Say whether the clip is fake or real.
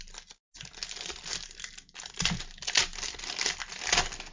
real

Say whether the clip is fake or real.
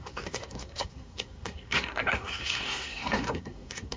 fake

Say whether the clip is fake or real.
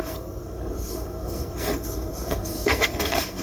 fake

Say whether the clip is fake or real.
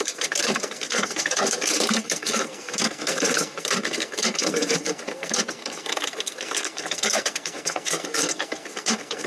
fake